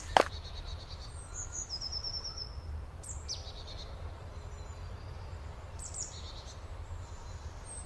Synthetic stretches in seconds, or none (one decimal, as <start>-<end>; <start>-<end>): 0.0-4.3; 5.0-7.9